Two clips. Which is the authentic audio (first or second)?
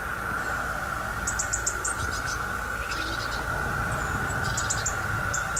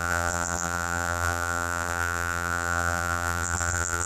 first